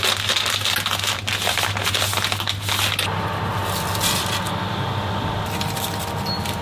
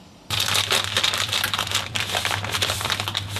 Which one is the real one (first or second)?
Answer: first